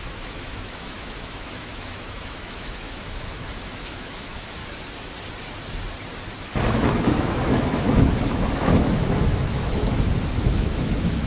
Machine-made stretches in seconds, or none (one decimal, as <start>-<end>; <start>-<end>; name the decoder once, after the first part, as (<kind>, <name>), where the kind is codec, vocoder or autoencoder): 0.0-4.6 (autoencoder, DAC-VAE); 6.7-11.3